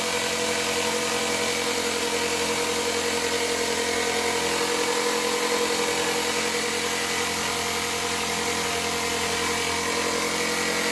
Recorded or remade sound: recorded